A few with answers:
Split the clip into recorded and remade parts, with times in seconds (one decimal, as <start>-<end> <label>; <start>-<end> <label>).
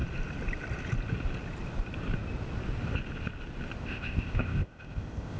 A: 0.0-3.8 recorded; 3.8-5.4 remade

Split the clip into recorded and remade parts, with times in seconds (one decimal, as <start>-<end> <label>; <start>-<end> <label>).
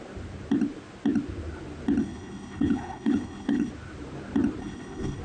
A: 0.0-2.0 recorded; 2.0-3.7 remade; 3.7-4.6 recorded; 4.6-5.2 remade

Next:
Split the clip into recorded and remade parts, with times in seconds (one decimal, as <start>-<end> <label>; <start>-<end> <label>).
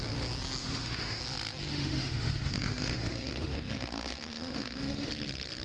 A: 0.0-0.6 recorded; 0.6-1.2 remade; 1.2-1.7 recorded; 1.7-5.1 remade; 5.1-5.6 recorded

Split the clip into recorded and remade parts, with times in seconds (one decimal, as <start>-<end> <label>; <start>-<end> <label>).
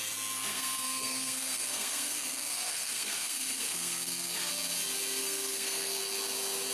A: 0.0-0.5 recorded; 0.5-4.5 remade; 4.5-5.2 recorded; 5.2-6.0 remade; 6.0-6.7 recorded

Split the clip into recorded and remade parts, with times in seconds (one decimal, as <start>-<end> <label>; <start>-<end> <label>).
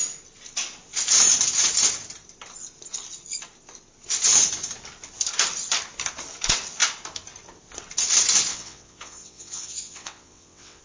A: 0.0-8.5 recorded; 8.5-10.8 remade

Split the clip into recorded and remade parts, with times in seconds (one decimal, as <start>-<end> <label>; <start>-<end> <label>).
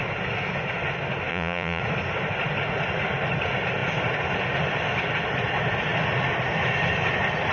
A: 0.0-1.3 recorded; 1.3-1.8 remade; 1.8-7.5 recorded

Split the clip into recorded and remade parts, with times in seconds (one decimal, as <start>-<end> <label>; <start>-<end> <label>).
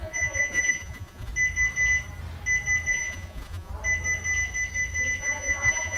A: 0.0-1.3 remade; 1.3-2.9 recorded; 2.9-3.7 remade; 3.7-5.2 recorded; 5.2-6.0 remade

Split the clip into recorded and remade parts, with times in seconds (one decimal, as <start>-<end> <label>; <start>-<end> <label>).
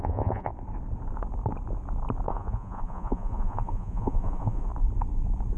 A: 0.0-0.5 remade; 0.5-2.3 recorded; 2.3-4.7 remade; 4.7-5.6 recorded